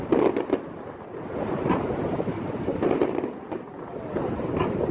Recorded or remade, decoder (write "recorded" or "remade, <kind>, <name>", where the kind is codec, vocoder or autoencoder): recorded